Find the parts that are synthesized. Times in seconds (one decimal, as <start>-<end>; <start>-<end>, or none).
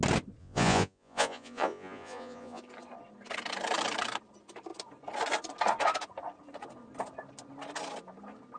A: 0.4-2.6